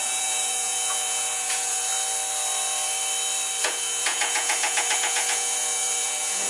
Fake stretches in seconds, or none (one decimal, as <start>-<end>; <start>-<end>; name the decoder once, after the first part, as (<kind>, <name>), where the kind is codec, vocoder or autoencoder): 0.0-1.9 (vocoder, Vocos); 3.6-6.5